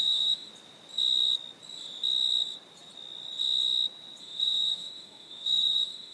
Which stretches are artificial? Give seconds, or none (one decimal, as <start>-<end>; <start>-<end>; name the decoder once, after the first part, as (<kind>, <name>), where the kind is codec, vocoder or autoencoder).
0.0-0.5 (autoencoder, DAC-VAE); 4.2-6.1